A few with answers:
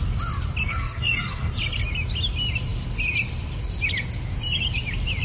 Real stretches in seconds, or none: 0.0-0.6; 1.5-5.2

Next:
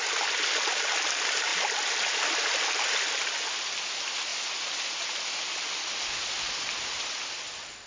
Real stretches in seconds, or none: 0.0-7.9

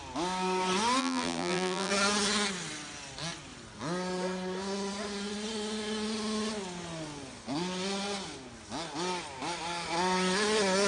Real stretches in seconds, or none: 0.0-1.0; 1.9-10.9

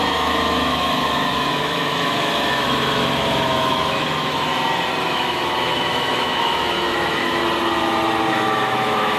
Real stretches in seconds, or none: 4.5-5.0; 7.4-8.3

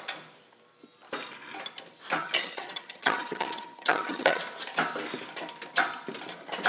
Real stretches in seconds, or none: 0.0-2.2; 4.4-6.7